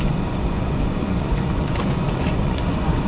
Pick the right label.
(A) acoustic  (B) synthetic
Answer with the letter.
B